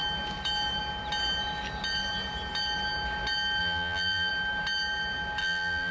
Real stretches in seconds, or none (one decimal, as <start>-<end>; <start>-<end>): 0.0-3.6; 4.3-5.4